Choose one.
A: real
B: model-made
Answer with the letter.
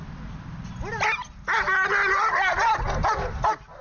A